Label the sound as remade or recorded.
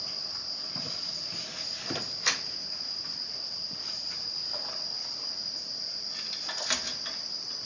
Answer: recorded